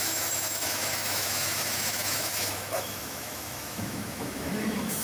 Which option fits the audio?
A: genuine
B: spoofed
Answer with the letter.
B